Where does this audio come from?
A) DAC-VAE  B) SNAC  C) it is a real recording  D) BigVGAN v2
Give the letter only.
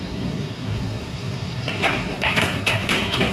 B